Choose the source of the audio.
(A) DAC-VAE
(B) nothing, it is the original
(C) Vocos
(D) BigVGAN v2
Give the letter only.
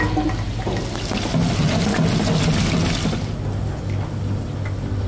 B